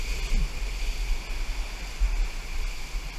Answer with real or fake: real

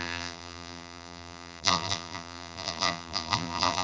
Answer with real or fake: fake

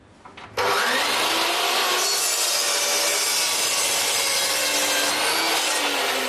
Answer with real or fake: real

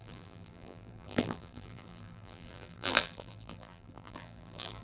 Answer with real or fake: fake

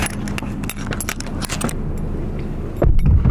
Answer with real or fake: real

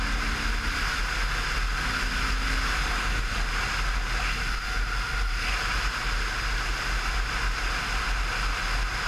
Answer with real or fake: real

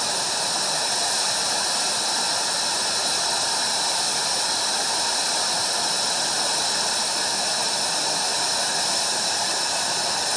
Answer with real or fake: real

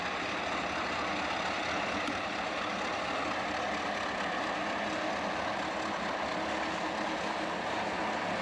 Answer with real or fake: real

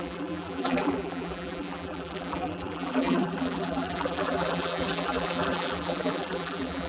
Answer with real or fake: fake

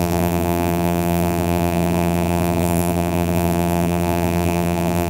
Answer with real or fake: fake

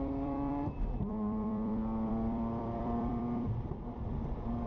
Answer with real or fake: fake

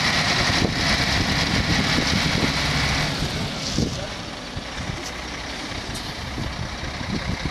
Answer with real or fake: real